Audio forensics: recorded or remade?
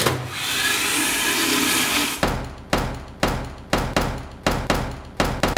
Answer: recorded